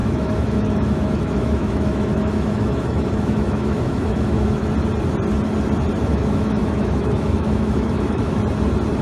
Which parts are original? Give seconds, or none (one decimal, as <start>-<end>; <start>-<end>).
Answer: 4.7-6.1; 8.4-9.0